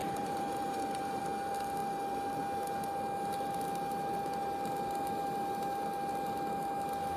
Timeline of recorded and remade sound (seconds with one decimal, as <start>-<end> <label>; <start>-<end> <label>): 0.0-1.2 remade; 1.2-7.2 recorded